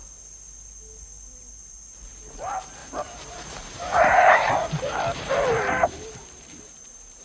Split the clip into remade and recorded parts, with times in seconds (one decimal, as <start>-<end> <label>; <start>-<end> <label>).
0.0-2.8 recorded; 2.8-4.5 remade; 4.5-5.1 recorded; 5.1-7.2 remade